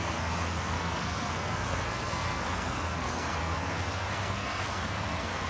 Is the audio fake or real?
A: fake